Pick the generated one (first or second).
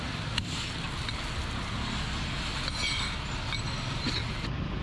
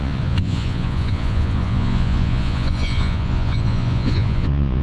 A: second